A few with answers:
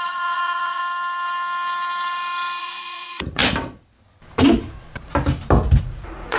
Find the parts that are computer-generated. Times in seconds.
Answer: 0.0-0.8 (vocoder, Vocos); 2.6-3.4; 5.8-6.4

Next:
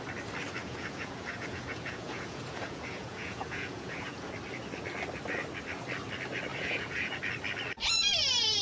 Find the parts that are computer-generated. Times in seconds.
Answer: 0.6-4.3 (vocoder, Vocos); 6.5-7.1

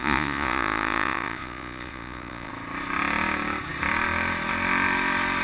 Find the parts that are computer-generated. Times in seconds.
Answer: 0.0-2.5 (vocoder, Vocos)

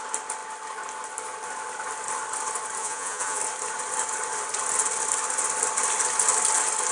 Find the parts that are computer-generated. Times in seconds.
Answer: 2.8-3.4 (vocoder, Vocos)

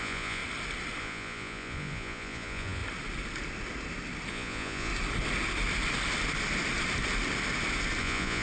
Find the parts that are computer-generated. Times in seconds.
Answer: 0.0-0.4 (vocoder, Vocos); 1.0-2.8; 4.3-4.9; 8.0-8.4

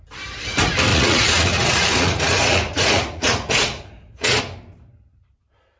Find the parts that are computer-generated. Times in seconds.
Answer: 0.9-4.4 (vocoder, Vocos)

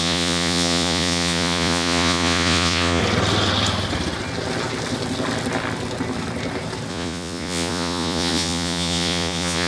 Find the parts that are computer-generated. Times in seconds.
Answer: 0.0-3.0 (vocoder, Vocos); 6.9-9.7

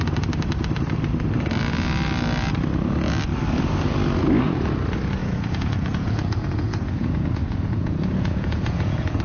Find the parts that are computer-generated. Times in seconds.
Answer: 5.2-9.2 (vocoder, Vocos)